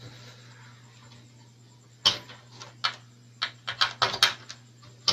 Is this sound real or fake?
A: real